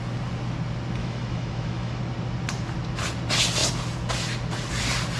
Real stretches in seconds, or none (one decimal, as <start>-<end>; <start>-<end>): 0.0-1.0; 2.0-5.2